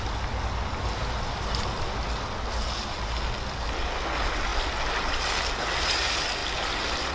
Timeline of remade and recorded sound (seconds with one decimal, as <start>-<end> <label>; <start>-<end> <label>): 0.0-7.1 recorded